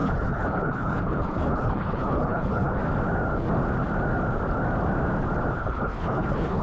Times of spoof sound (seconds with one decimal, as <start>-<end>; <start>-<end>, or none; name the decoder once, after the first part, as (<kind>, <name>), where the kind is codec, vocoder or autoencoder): 0.0-2.8 (codec, HILCodec); 5.6-6.6